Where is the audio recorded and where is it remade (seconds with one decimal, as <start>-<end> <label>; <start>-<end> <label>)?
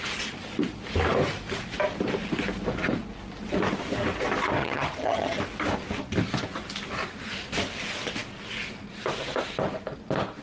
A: 0.0-4.6 recorded; 4.6-5.4 remade; 5.4-10.4 recorded